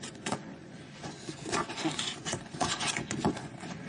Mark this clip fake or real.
fake